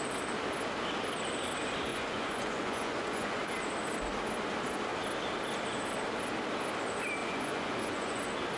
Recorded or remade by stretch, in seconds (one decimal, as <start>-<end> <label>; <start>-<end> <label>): 0.0-1.9 recorded; 1.9-3.4 remade; 3.4-7.2 recorded; 7.2-8.2 remade; 8.2-8.6 recorded